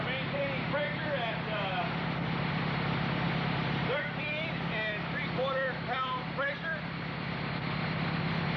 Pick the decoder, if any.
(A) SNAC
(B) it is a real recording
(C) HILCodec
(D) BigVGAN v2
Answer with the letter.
B